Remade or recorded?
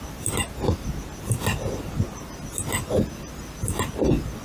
recorded